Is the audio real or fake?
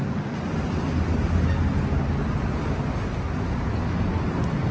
real